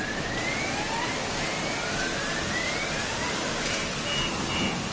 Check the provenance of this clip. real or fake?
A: real